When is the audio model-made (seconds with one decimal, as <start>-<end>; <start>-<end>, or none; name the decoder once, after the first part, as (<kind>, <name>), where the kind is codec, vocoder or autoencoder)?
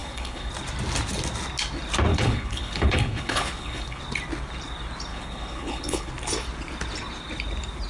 0.0-0.5 (codec, HILCodec); 2.1-4.0; 5.1-6.1